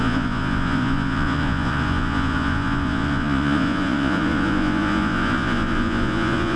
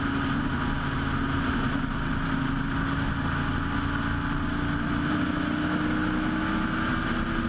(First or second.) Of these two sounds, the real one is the second